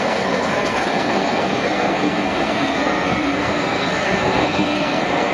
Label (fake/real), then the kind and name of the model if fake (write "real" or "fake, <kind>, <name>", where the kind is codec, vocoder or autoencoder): fake, codec, SNAC